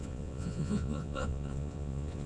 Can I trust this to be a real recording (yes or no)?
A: no